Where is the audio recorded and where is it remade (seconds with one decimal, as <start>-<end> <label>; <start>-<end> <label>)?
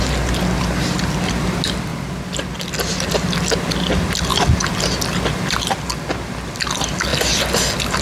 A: 0.0-8.0 recorded